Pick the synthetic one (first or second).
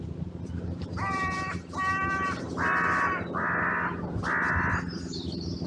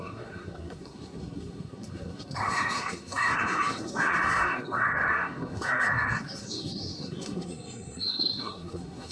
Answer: second